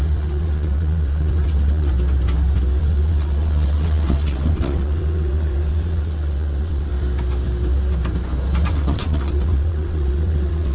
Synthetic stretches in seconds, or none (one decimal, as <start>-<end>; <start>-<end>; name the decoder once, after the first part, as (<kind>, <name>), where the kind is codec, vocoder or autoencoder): 0.0-1.9 (vocoder, WaveNeXt); 2.8-6.9; 8.7-10.7